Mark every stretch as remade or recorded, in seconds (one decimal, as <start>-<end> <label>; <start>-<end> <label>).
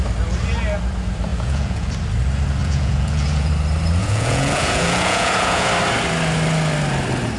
0.0-1.3 recorded; 1.3-1.9 remade; 1.9-2.6 recorded; 2.6-3.5 remade; 3.5-4.0 recorded; 4.0-5.7 remade; 5.7-7.4 recorded